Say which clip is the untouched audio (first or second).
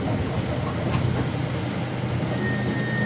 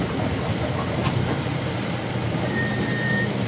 first